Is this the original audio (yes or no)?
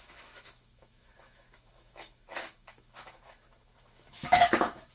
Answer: no